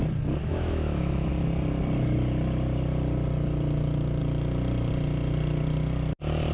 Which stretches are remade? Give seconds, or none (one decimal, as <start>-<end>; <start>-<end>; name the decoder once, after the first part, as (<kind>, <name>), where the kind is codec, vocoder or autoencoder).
0.4-1.3 (autoencoder, DAC-VAE)